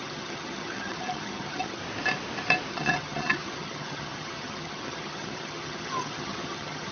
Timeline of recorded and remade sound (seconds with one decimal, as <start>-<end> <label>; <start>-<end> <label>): 0.0-1.8 remade; 1.8-2.7 recorded; 2.7-6.9 remade